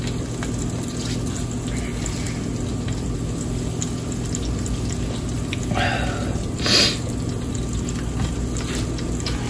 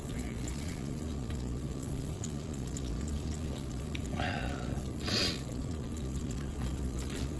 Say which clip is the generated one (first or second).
second